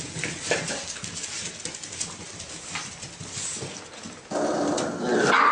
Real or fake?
real